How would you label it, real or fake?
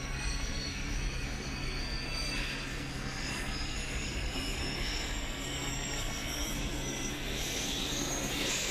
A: fake